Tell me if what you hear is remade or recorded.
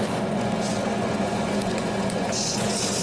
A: remade